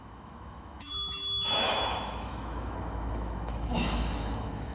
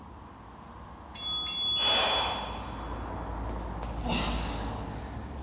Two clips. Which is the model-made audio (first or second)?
first